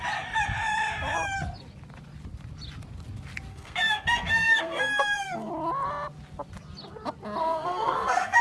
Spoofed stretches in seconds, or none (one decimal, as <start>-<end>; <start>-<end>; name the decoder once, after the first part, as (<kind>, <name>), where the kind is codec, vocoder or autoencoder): 3.5-5.5 (codec, SNAC); 7.4-8.4